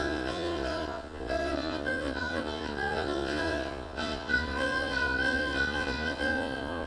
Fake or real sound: fake